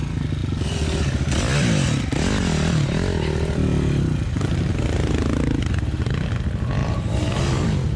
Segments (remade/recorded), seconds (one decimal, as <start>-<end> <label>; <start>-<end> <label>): 0.0-6.8 recorded; 6.8-7.4 remade; 7.4-8.0 recorded